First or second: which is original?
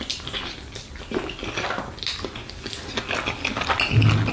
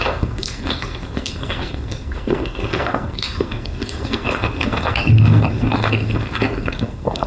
first